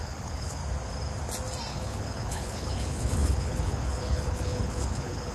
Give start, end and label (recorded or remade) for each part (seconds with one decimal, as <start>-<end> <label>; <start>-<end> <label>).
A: 0.0-0.6 remade; 0.6-1.7 recorded; 1.7-5.3 remade